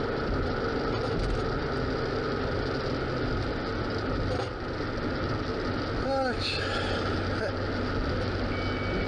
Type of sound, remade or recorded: recorded